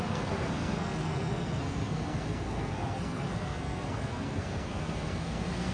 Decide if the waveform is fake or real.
fake